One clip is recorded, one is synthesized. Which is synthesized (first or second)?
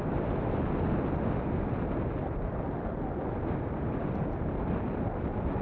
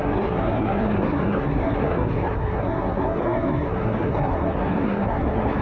second